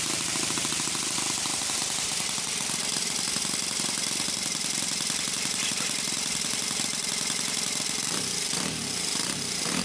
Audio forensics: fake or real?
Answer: fake